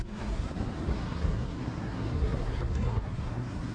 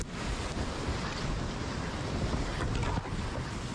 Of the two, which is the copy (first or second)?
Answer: first